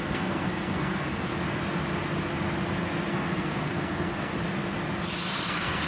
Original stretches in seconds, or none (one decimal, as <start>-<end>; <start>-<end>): 1.3-3.1; 4.3-5.3